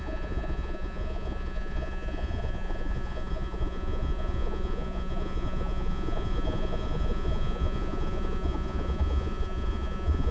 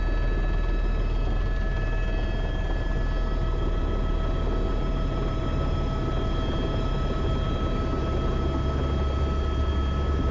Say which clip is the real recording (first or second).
second